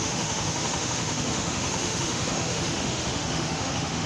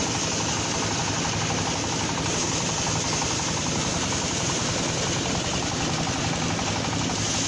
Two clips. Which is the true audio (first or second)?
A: second